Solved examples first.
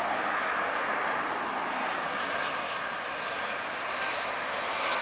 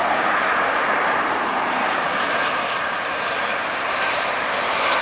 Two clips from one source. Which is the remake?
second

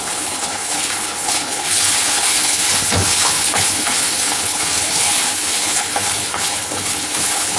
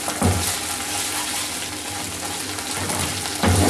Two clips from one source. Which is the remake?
first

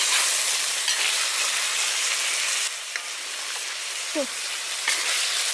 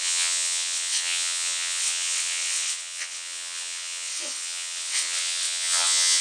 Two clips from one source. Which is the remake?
second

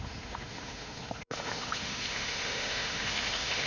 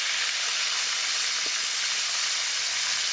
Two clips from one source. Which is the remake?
first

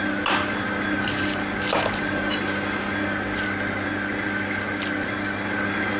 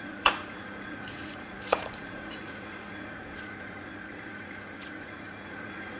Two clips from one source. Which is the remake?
second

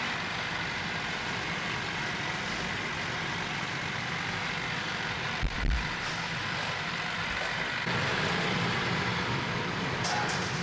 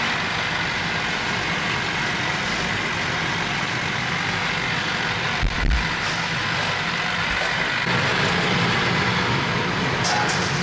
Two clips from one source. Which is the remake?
first